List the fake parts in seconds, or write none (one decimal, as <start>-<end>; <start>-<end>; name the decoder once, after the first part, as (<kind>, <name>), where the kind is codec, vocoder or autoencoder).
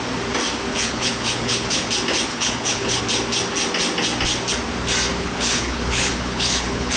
0.7-1.9 (codec, HILCodec); 2.3-3.0; 5.2-7.0